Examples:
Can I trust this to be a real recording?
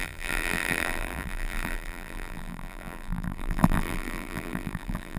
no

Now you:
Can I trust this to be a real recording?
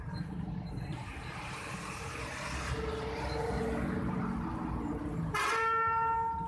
yes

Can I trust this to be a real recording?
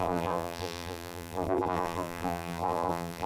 no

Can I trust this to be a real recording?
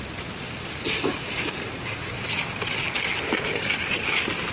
yes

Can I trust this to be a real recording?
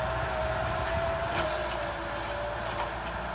yes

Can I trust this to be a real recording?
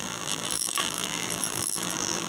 no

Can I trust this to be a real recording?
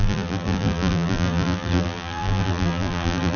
no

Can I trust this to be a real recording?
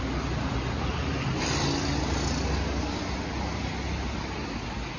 yes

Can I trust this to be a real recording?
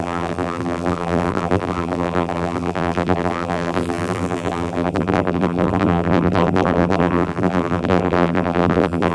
no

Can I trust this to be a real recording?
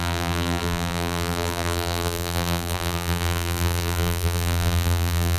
no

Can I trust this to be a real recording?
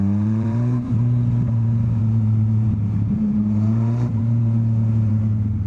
no